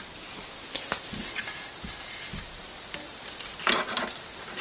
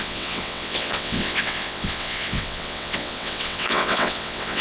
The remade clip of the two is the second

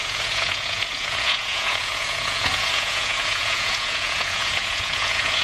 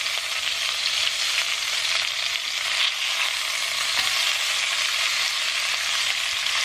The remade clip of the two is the first